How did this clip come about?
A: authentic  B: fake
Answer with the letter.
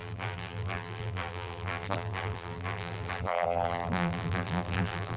B